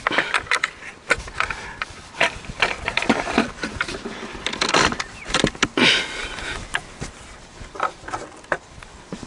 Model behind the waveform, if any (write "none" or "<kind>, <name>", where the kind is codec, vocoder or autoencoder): vocoder, BigVGAN v2